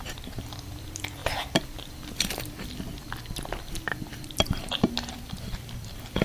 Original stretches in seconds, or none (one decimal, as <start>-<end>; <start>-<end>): 0.0-1.2; 2.6-3.9; 4.8-6.2